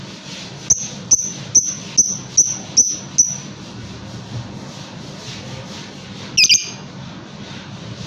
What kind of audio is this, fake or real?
real